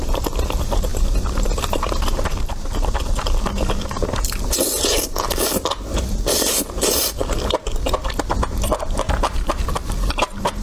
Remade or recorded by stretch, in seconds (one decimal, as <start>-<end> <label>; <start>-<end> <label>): 0.0-7.2 remade; 7.2-9.3 recorded; 9.3-10.6 remade